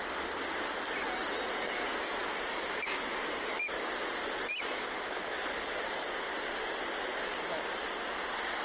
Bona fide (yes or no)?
yes